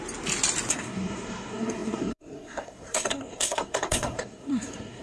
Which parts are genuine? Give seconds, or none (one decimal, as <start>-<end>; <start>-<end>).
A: 0.0-0.7